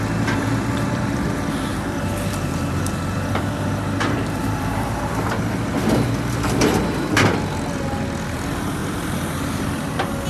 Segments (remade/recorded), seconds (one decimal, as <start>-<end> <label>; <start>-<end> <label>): 0.0-1.7 recorded; 1.7-5.4 remade; 5.4-8.8 recorded; 8.8-9.9 remade; 9.9-10.3 recorded